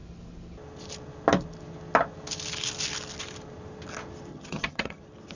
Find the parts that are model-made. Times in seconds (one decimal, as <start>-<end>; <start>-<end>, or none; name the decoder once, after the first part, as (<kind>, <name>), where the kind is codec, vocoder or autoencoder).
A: 4.3-5.0 (vocoder, HiFi-GAN)

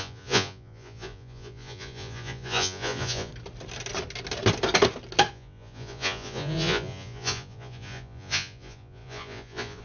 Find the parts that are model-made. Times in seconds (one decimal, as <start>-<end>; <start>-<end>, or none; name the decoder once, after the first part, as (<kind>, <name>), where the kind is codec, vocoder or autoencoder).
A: 0.0-3.3 (vocoder, Vocos); 5.3-9.8